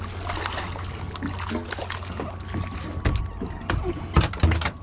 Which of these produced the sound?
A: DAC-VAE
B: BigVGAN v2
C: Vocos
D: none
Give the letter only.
D